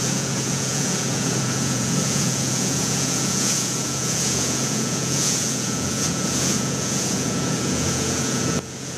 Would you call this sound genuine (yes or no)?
no